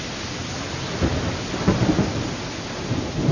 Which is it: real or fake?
real